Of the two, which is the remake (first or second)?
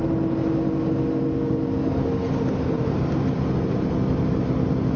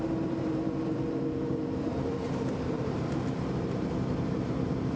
second